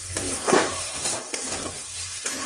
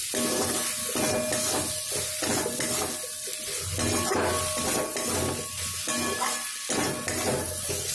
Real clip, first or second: second